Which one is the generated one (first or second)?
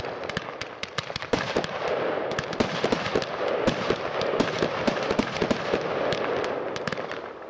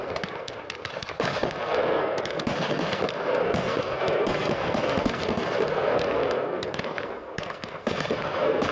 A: second